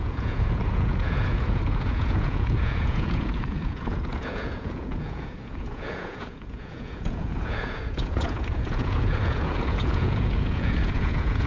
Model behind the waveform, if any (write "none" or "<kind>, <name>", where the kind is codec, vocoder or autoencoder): vocoder, Vocos